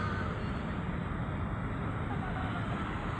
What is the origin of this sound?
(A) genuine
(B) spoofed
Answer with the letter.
A